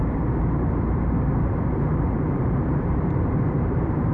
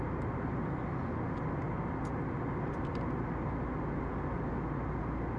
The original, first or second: second